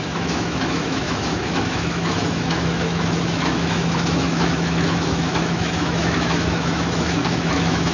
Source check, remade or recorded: remade